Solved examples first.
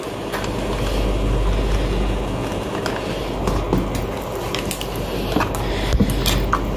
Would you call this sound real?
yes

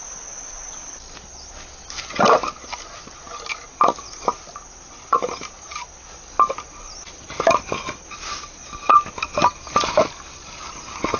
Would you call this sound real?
yes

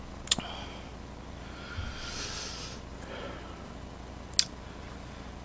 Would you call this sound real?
yes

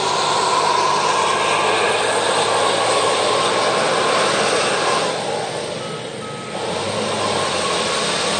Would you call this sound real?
yes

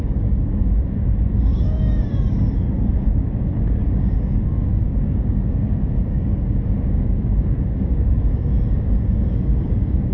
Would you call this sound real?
no